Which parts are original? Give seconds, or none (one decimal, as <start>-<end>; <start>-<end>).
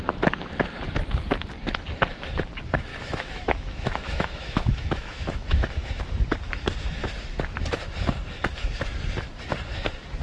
0.0-2.9; 6.0-10.2